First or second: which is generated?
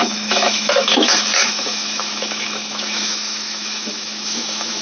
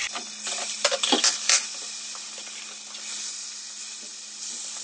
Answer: first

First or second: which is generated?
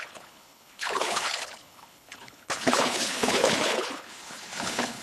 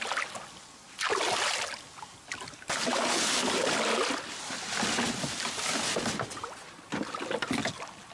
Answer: first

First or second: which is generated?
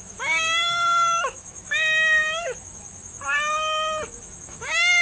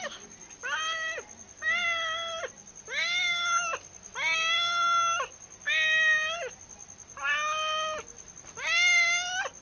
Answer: first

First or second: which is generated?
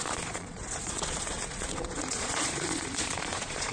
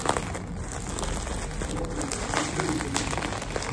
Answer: first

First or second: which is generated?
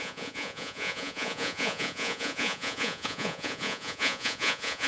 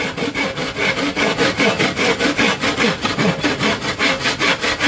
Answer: first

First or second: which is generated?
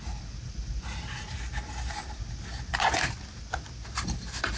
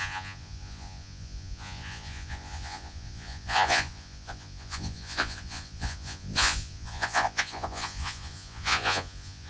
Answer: second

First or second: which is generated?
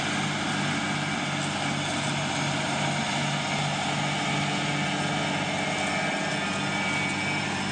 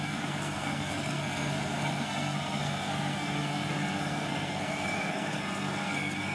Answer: second